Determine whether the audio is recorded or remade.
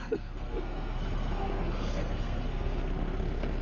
remade